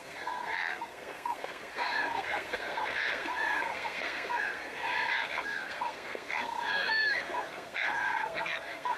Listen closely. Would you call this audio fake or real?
fake